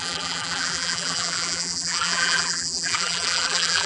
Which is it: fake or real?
fake